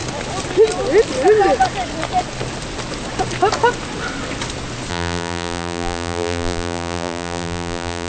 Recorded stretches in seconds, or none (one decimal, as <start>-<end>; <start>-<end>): 0.0-4.9